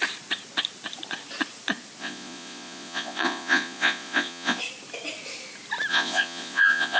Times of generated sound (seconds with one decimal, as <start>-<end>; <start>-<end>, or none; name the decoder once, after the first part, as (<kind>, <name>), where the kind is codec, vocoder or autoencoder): 2.0-4.6 (vocoder, Vocos); 5.9-7.0